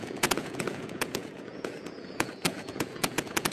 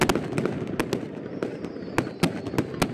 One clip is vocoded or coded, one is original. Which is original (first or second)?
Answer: second